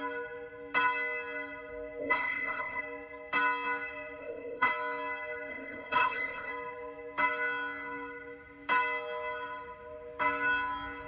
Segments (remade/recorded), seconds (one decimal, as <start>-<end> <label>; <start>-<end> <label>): 0.0-2.0 recorded; 2.0-2.8 remade; 2.8-4.2 recorded; 4.2-4.7 remade; 4.7-5.5 recorded; 5.5-6.5 remade; 6.5-11.1 recorded